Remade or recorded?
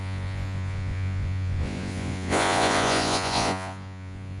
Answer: remade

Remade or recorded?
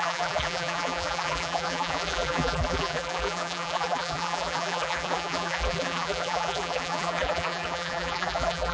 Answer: remade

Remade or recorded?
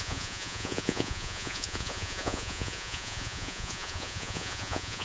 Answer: remade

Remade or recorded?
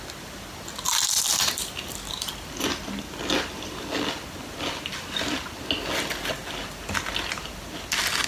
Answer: recorded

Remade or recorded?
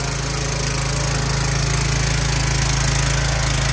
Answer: recorded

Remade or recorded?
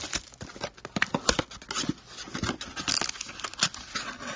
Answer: recorded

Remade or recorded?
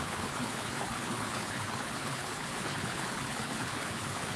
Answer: remade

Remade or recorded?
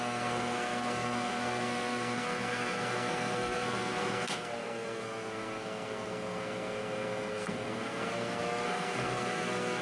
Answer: remade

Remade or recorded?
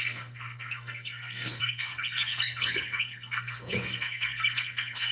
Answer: remade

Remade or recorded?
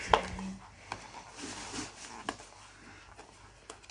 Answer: recorded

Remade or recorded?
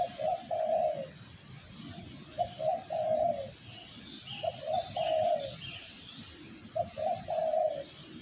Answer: recorded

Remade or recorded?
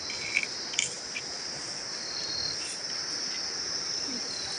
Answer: recorded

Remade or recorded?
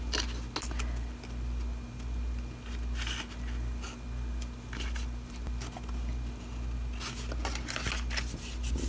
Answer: recorded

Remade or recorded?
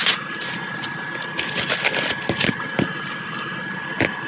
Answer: recorded